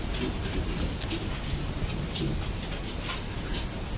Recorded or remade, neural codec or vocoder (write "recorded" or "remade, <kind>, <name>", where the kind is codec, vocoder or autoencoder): recorded